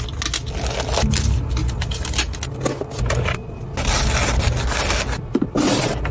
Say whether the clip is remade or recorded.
recorded